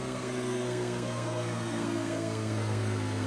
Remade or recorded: remade